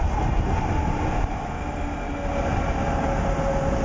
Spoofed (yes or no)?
no